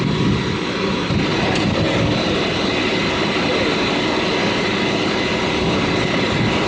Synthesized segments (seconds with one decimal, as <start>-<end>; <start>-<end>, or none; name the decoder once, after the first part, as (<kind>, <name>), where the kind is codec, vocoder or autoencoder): none